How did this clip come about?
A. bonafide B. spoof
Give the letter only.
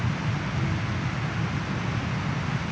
A